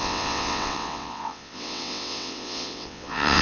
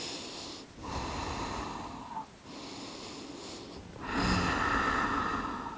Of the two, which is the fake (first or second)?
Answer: first